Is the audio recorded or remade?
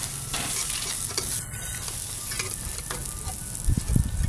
recorded